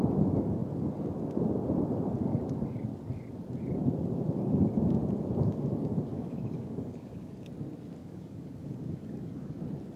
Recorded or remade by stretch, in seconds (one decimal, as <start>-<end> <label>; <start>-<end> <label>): 0.0-6.1 recorded; 6.1-7.5 remade; 7.5-8.0 recorded; 8.0-9.6 remade; 9.6-10.0 recorded